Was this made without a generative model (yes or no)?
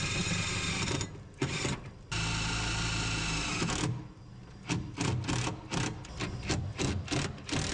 yes